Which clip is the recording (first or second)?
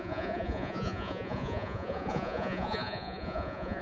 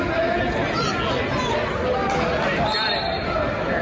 second